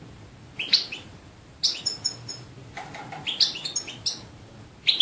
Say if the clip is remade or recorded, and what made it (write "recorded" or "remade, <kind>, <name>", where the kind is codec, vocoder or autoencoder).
recorded